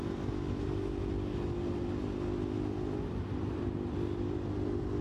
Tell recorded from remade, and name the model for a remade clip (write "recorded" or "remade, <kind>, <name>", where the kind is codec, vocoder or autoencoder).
recorded